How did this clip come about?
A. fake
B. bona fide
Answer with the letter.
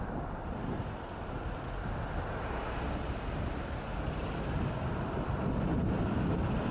B